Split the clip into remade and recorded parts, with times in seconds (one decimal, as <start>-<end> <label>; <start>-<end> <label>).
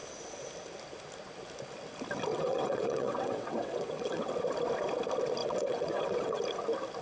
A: 0.0-2.3 recorded; 2.3-4.3 remade; 4.3-5.4 recorded; 5.4-6.4 remade; 6.4-7.0 recorded